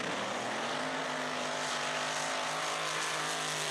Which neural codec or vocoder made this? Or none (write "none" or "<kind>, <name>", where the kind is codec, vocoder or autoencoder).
none